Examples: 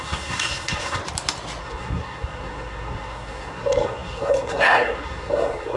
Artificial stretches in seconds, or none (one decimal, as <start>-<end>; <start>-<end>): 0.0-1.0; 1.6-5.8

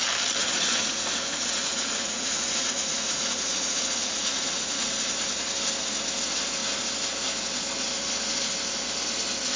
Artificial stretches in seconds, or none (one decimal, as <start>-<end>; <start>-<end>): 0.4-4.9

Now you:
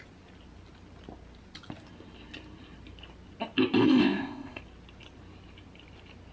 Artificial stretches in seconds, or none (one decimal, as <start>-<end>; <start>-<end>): 4.0-4.6

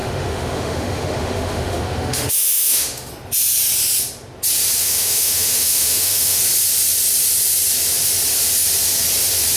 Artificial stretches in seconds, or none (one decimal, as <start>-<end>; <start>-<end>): 0.0-3.1; 4.8-6.4

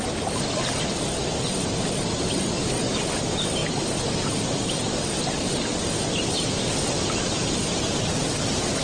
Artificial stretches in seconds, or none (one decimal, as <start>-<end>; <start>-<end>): none